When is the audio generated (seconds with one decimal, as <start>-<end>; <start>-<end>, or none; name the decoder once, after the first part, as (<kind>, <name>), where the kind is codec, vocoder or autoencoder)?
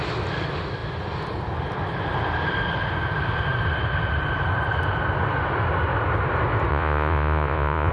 6.7-7.9 (vocoder, Vocos)